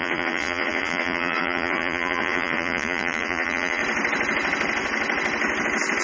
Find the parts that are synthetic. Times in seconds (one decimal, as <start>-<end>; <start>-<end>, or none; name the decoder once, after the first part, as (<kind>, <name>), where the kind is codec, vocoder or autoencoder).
0.0-3.8 (vocoder, Vocos)